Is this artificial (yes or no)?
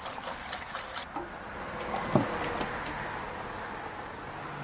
no